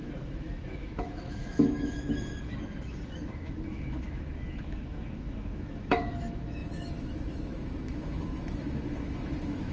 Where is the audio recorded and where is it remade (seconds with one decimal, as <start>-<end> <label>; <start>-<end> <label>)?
0.0-9.7 remade